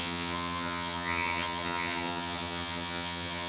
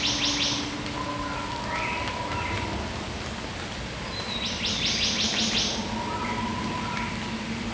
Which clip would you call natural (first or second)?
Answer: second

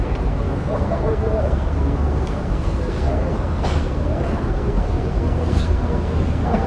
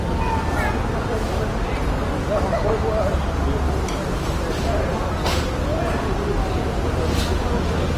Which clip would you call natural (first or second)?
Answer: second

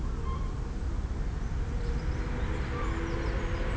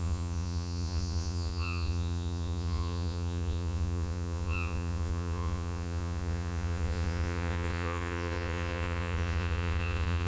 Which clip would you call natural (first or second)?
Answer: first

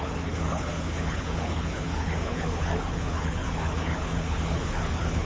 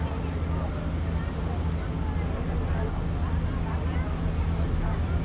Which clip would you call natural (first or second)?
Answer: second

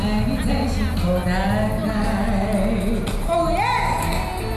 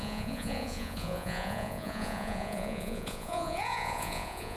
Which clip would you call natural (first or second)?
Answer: first